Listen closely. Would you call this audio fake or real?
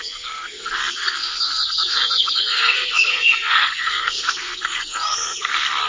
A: fake